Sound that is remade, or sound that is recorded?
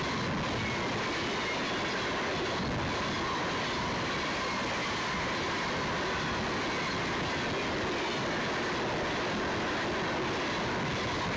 recorded